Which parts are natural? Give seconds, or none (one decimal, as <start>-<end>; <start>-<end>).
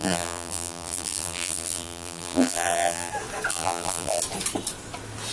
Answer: 3.1-3.5; 4.2-5.3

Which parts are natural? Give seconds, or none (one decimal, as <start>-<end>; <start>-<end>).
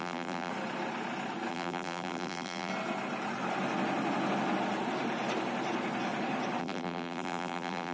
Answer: 0.5-1.5; 2.7-6.6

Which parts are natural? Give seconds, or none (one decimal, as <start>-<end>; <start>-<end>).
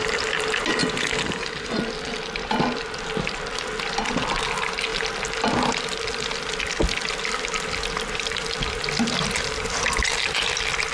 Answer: 0.0-10.9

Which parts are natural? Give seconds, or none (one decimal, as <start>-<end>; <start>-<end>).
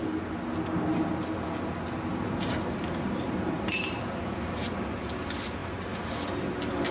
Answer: 0.0-2.1; 4.0-5.6; 6.2-6.9